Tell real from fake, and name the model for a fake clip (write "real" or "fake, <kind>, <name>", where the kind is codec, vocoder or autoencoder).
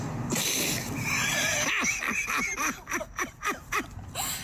real